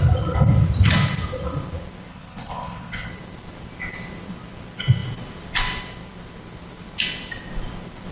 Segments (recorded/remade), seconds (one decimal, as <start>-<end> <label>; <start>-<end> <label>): 0.0-2.1 recorded; 2.1-3.1 remade; 3.1-8.1 recorded